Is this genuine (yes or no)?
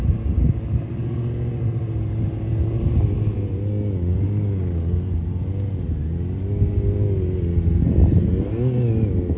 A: yes